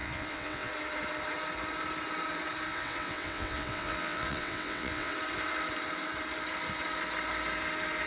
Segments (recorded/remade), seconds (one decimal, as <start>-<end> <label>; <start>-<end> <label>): 0.0-0.7 remade; 0.7-2.7 recorded; 2.7-5.1 remade; 5.1-8.1 recorded